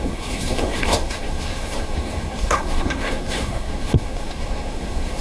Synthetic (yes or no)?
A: yes